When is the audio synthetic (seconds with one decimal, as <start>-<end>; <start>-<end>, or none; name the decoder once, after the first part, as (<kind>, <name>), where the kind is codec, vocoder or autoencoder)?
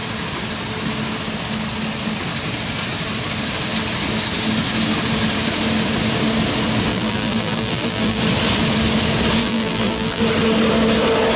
6.9-8.2 (vocoder, BigVGAN v2); 9.4-10.2